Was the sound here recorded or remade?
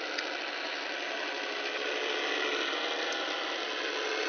recorded